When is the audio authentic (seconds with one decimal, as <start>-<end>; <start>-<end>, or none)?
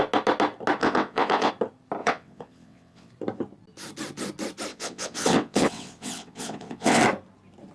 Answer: 0.0-0.8; 1.5-2.0; 3.1-4.7; 7.0-7.7